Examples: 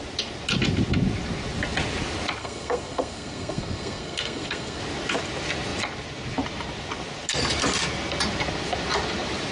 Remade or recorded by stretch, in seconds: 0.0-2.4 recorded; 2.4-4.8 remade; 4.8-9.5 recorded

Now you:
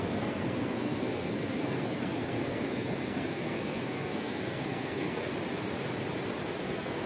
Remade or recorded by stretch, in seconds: 0.0-5.3 remade; 5.3-6.6 recorded; 6.6-7.1 remade

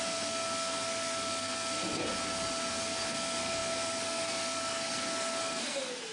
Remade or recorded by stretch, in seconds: 0.0-2.0 remade; 2.0-2.7 recorded; 2.7-6.1 remade

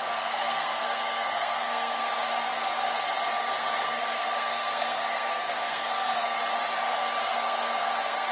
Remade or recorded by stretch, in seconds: 0.0-2.1 remade; 2.1-3.4 recorded; 3.4-6.4 remade; 6.4-7.2 recorded; 7.2-8.3 remade